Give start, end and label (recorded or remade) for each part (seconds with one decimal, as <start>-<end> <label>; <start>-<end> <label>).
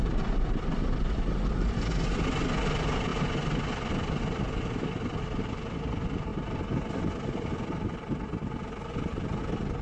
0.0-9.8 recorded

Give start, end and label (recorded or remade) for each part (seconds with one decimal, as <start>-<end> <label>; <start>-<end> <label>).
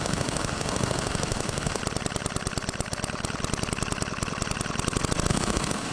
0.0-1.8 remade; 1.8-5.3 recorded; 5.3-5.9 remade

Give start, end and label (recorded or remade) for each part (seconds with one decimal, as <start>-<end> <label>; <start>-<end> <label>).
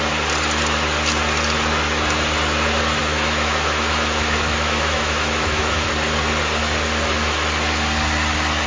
0.0-3.0 recorded; 3.0-5.9 remade; 5.9-8.7 recorded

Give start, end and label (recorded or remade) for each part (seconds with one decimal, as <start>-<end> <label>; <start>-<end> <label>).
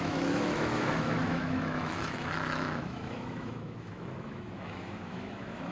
0.0-5.7 remade